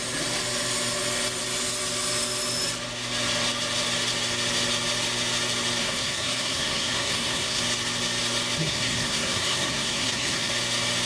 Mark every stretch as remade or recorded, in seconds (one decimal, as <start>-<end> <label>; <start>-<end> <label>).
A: 0.0-5.8 recorded; 5.8-7.6 remade; 7.6-8.6 recorded; 8.6-10.5 remade; 10.5-11.1 recorded